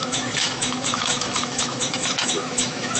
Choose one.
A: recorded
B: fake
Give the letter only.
B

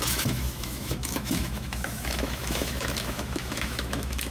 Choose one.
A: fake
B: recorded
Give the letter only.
A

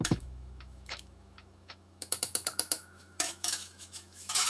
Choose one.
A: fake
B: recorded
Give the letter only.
A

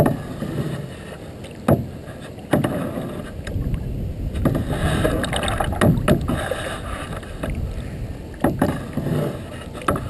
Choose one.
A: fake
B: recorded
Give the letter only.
B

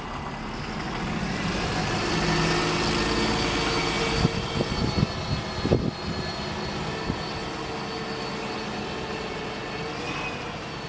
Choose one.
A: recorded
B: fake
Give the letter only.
A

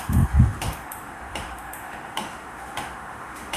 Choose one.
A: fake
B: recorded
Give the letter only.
A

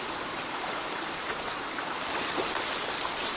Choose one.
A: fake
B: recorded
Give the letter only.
B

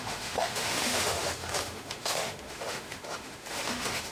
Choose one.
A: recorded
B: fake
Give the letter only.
B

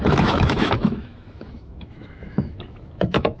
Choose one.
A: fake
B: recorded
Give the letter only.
A